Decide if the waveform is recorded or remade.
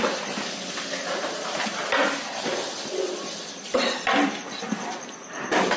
recorded